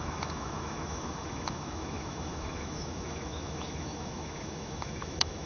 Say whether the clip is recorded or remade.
remade